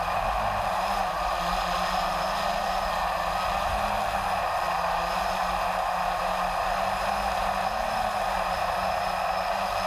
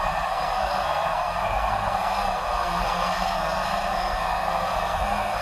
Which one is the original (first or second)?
first